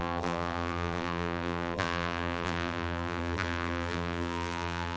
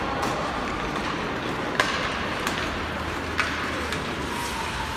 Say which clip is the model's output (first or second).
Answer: first